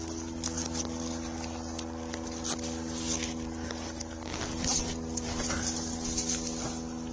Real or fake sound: real